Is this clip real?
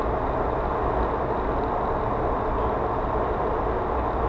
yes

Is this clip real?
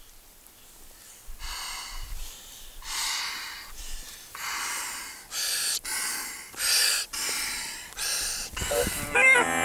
yes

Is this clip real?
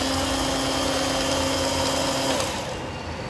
yes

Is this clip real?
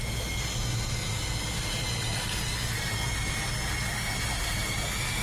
yes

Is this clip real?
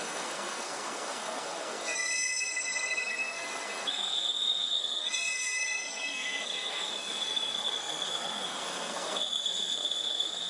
no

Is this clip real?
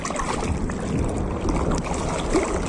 yes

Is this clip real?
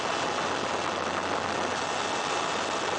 yes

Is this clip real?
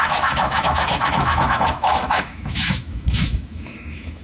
no